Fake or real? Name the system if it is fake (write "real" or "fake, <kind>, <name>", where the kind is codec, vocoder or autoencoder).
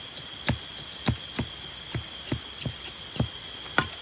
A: real